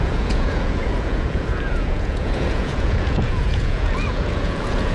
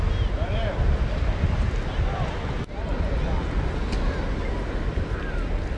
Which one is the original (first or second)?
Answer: second